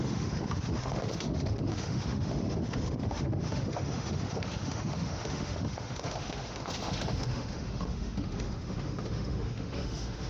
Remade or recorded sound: remade